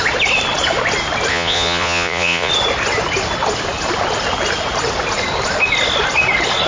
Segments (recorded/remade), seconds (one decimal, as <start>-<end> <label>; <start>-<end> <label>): 0.0-1.3 recorded; 1.3-2.5 remade; 2.5-6.7 recorded